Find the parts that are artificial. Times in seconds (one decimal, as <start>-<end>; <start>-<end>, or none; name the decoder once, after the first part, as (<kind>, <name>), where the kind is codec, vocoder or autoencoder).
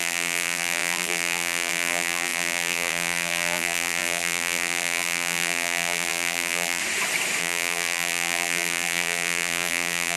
0.0-6.8 (vocoder, BigVGAN v2); 7.4-10.2